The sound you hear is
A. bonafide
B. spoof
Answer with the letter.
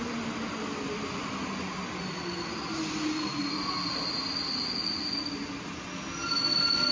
A